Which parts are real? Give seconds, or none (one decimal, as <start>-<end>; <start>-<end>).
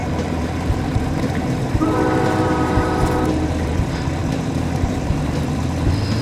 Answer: 3.7-4.2; 5.2-6.2